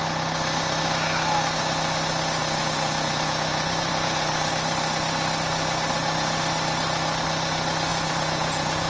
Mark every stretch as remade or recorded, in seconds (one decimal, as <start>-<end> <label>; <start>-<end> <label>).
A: 0.0-2.4 recorded; 2.4-4.5 remade; 4.5-7.9 recorded; 7.9-8.9 remade